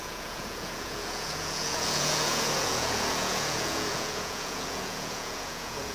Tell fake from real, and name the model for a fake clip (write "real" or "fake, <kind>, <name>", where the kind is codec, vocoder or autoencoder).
fake, vocoder, Vocos